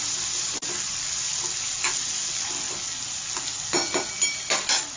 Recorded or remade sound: recorded